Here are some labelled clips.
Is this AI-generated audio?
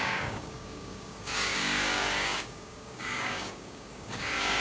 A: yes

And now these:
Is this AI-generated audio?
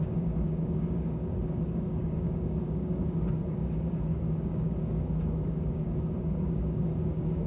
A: yes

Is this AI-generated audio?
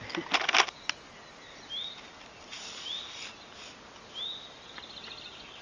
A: no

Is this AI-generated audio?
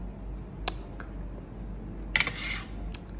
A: no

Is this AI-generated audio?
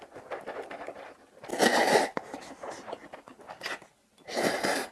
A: no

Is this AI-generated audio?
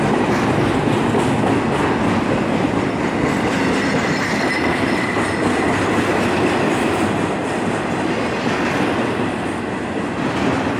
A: no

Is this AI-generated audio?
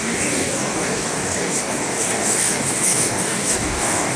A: yes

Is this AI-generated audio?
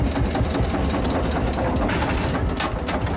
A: no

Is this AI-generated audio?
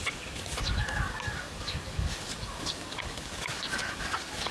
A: yes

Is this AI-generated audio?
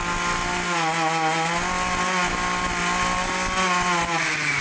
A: no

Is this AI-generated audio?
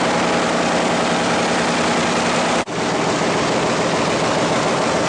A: no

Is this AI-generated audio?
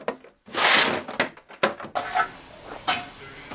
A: no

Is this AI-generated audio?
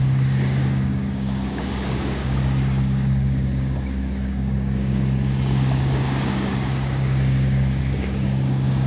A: yes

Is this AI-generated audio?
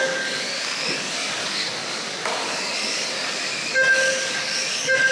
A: yes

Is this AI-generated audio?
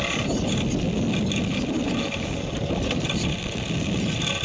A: no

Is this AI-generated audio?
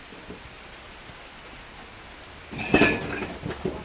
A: no